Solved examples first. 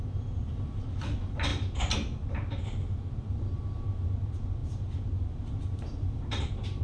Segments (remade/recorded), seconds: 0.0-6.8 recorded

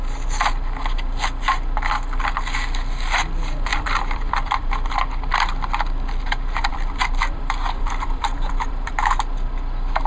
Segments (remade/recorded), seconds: 0.0-3.7 recorded; 3.7-5.1 remade; 5.1-6.7 recorded; 6.7-8.9 remade; 8.9-10.1 recorded

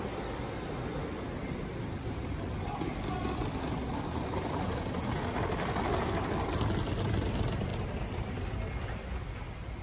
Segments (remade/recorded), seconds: 0.0-9.8 recorded

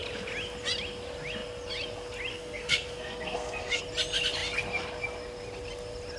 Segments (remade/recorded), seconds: 0.0-2.3 recorded; 2.3-3.8 remade; 3.8-6.2 recorded

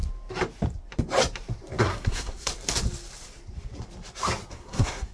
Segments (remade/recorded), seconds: 0.0-1.8 recorded; 1.8-2.5 remade; 2.5-4.5 recorded; 4.5-5.1 remade

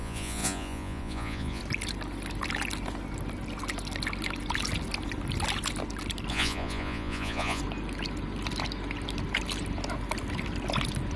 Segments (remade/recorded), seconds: 0.0-1.6 remade; 1.6-6.3 recorded; 6.3-7.6 remade; 7.6-11.2 recorded

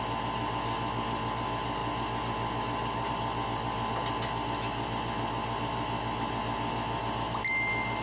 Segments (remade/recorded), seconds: 0.0-8.0 recorded